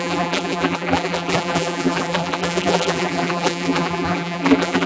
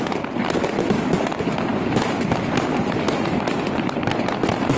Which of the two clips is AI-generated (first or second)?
first